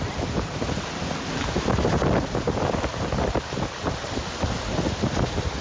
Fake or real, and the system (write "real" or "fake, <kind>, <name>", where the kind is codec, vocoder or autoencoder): real